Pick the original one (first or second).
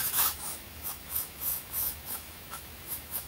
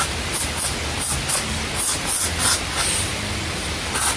second